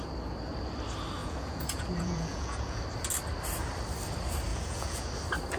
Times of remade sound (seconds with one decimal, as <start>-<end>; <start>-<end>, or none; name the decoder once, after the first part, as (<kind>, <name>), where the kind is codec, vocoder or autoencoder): 1.2-2.8 (vocoder, Vocos); 4.5-5.1